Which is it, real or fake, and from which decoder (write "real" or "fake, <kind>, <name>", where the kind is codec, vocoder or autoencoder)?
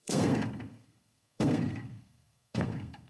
fake, codec, SNAC